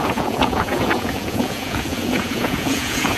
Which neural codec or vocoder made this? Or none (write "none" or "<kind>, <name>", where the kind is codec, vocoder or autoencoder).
vocoder, Vocos